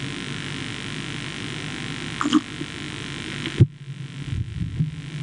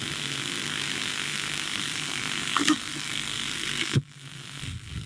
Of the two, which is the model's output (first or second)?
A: second